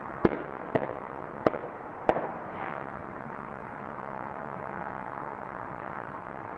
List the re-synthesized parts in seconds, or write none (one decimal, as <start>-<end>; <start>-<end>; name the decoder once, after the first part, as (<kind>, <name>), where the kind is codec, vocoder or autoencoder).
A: 0.0-1.6 (vocoder, WaveNeXt); 2.6-6.6